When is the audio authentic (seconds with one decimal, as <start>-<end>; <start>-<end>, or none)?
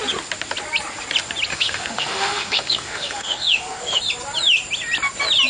0.0-1.5; 4.0-5.5